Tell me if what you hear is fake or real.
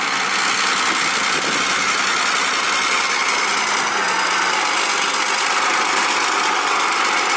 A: real